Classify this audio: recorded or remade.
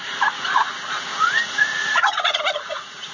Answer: remade